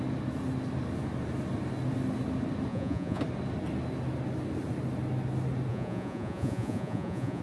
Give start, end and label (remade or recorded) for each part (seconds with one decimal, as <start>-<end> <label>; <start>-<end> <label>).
0.0-2.7 recorded; 2.7-3.2 remade; 3.2-5.7 recorded; 5.7-7.4 remade

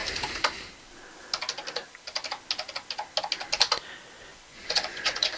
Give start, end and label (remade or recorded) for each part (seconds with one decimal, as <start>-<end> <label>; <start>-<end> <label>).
0.0-4.3 recorded; 4.3-5.4 remade